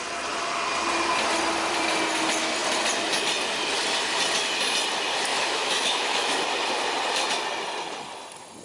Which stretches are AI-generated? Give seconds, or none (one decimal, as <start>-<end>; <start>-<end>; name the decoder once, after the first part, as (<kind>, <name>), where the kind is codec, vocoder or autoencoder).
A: 5.3-6.4 (autoencoder, DAC-VAE)